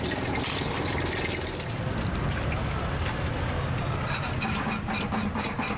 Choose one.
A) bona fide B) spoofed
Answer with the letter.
A